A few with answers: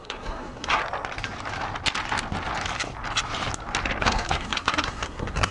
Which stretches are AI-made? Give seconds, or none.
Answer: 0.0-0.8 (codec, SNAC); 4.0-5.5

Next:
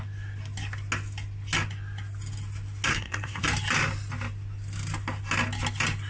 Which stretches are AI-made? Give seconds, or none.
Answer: 2.9-3.4 (codec, SNAC)

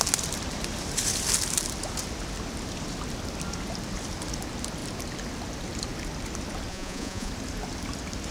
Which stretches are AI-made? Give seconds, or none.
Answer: 6.7-7.3 (vocoder, Vocos)

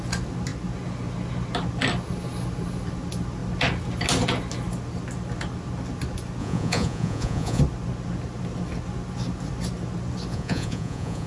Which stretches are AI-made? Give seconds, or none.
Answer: 6.4-7.6 (vocoder, Vocos); 10.3-11.3

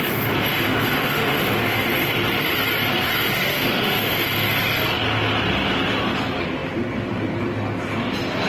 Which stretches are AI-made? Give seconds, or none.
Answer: 0.5-1.8 (autoencoder, DAC-VAE); 3.5-4.2

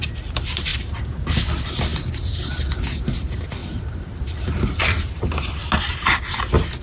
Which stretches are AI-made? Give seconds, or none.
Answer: 0.7-1.2 (vocoder, BigVGAN v2); 3.6-4.8

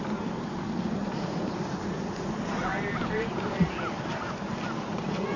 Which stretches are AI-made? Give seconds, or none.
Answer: 1.0-2.7 (vocoder, Vocos); 4.9-5.4